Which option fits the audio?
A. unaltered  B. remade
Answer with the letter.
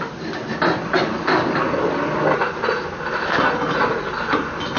A